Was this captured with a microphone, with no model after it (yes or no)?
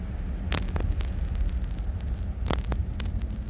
yes